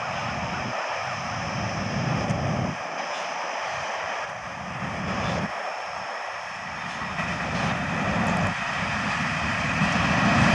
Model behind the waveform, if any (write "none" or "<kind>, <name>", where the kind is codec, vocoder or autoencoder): vocoder, BigVGAN v2